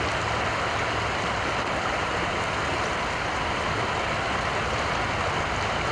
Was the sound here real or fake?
real